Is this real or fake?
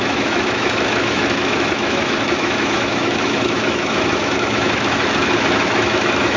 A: fake